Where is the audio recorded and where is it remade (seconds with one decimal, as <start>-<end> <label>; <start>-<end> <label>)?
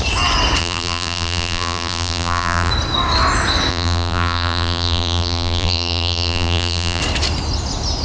0.0-0.6 recorded; 0.6-2.7 remade; 2.7-3.7 recorded; 3.7-7.0 remade; 7.0-8.0 recorded